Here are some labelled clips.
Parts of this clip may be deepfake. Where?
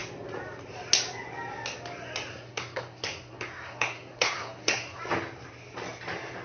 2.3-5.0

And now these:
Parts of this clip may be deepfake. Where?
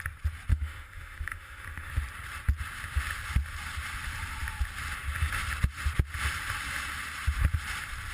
0.5-1.9